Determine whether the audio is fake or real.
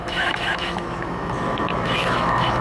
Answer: fake